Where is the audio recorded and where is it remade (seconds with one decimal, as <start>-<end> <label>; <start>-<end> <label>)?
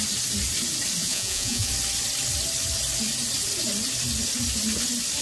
0.0-1.0 recorded; 1.0-1.7 remade; 1.7-5.2 recorded